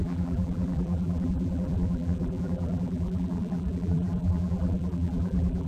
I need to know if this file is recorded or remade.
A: remade